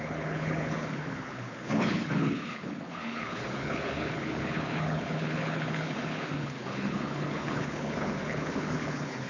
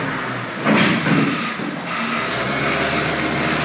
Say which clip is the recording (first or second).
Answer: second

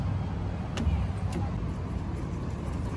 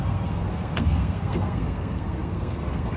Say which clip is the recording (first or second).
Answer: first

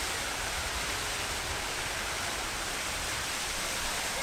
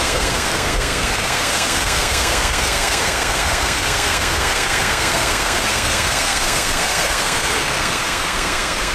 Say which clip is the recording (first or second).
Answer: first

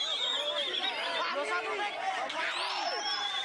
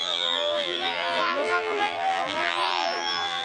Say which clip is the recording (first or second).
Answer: first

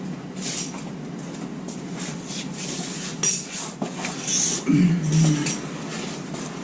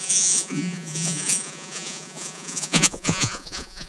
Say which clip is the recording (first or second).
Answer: first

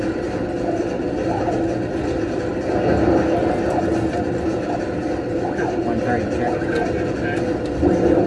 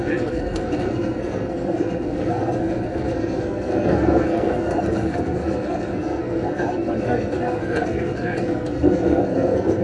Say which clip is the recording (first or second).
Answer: first